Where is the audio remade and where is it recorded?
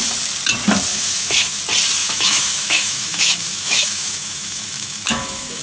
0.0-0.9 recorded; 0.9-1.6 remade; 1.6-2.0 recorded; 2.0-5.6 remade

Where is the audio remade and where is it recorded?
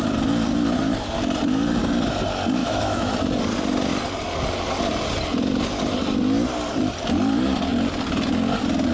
0.0-2.6 recorded; 2.6-3.1 remade; 3.1-8.9 recorded